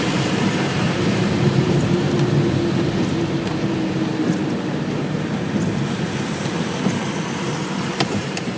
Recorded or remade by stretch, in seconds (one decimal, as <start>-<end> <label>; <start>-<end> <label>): 0.0-4.1 remade; 4.1-8.0 recorded; 8.0-8.6 remade